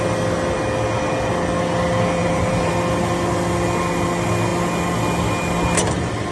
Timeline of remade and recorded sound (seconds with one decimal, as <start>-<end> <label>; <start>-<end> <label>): 0.0-2.2 recorded; 2.2-2.7 remade; 2.7-6.3 recorded